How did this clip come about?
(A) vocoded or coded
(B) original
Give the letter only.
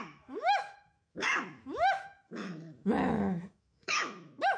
A